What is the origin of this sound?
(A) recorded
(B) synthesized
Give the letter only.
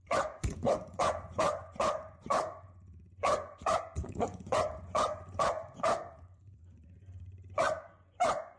B